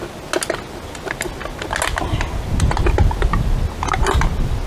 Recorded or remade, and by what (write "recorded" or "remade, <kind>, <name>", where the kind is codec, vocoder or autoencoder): recorded